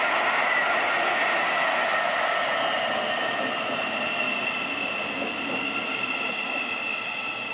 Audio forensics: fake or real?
real